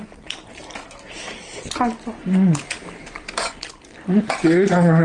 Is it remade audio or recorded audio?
recorded